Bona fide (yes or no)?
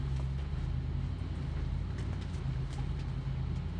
yes